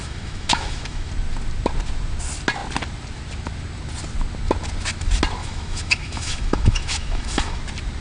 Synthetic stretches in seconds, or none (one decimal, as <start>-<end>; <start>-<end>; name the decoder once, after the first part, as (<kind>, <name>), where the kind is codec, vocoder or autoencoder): 0.0-1.1 (autoencoder, DAC-VAE); 5.4-7.6